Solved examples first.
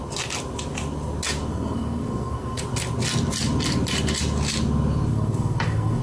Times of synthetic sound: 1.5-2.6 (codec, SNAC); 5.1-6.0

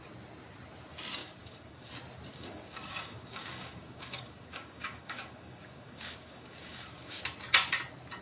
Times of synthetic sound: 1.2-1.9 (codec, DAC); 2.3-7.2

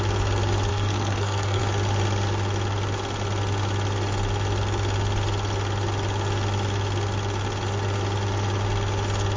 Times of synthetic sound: 0.7-1.6 (codec, SNAC)

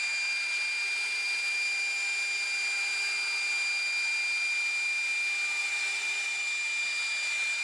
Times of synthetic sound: 5.6-6.3 (vocoder, BigVGAN v2)

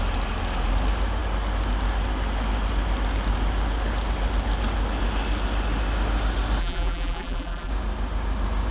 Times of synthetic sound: 6.6-7.7 (vocoder, BigVGAN v2)